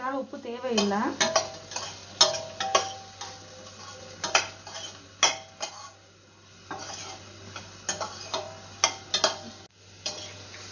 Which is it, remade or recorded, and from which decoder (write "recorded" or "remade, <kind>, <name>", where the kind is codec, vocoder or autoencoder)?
recorded